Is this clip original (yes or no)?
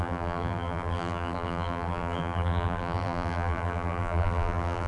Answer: no